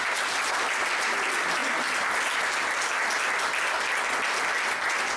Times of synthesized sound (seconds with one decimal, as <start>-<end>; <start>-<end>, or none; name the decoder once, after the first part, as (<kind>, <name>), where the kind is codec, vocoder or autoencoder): none